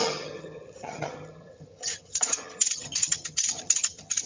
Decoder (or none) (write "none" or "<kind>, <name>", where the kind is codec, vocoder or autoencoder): vocoder, HiFi-GAN